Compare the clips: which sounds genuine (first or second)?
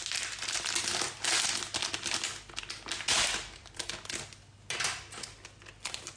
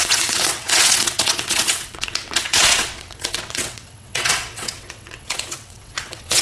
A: first